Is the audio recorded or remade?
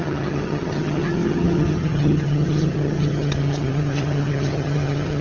remade